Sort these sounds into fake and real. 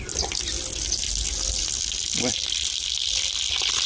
real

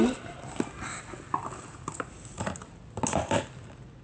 real